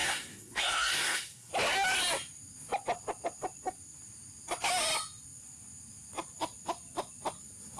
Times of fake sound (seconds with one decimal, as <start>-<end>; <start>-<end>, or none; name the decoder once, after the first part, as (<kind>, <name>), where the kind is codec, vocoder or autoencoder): 0.0-1.5 (codec, SNAC)